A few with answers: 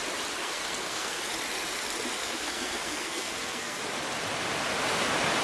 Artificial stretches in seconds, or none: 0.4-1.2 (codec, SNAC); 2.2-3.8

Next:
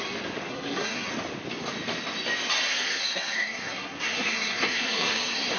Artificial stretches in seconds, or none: 0.5-1.1 (codec, SNAC); 2.7-5.6

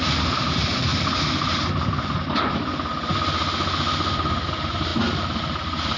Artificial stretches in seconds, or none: 0.0-0.9 (vocoder, BigVGAN v2); 4.5-6.0

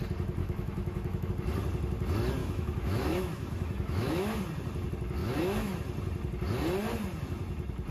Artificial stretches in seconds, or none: 0.4-1.3 (autoencoder, DAC-VAE); 2.4-4.4; 5.2-5.8

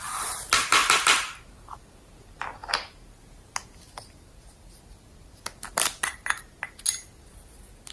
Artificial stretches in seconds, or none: none

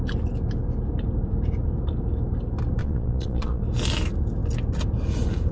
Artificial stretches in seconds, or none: 2.8-3.6 (vocoder, Vocos)